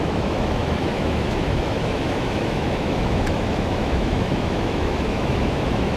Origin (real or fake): fake